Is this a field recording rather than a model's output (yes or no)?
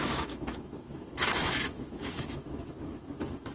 no